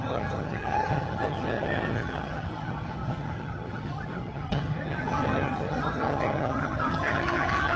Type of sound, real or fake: fake